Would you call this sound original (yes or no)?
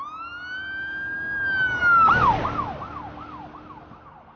yes